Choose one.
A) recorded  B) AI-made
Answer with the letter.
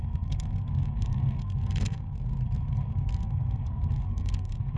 B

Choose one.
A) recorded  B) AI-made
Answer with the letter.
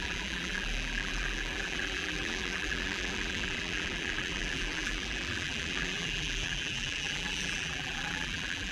B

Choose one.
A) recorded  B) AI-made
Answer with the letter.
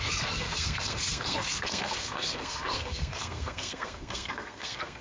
B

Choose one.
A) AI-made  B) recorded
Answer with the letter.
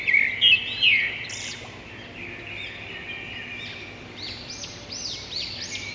B